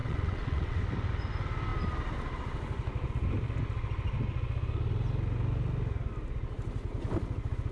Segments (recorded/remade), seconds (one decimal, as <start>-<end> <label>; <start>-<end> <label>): 0.0-0.8 remade; 0.8-7.7 recorded